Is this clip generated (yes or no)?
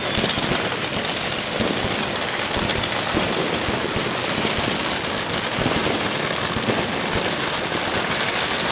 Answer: no